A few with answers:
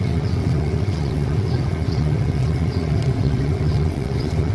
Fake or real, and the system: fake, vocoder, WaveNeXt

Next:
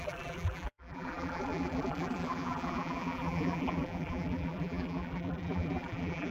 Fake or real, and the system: fake, vocoder, BigVGAN v2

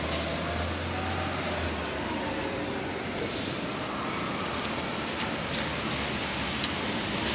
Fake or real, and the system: real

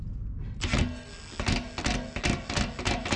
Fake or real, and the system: real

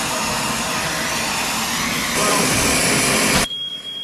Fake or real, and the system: real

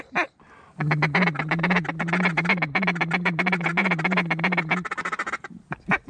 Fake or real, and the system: real